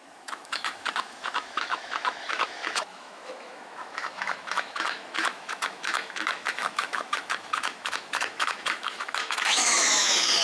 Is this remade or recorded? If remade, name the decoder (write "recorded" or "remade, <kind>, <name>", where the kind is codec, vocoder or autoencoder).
remade, autoencoder, DAC-VAE